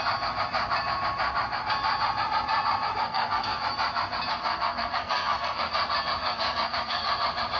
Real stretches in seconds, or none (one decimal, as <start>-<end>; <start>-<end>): 0.0-3.0; 3.6-4.3; 5.7-6.2; 7.1-7.6